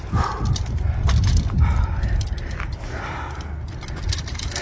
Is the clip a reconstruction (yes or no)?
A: no